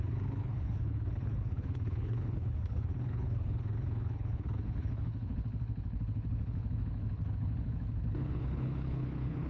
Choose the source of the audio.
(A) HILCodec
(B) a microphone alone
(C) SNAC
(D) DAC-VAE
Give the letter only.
A